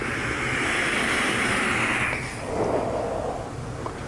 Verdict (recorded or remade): recorded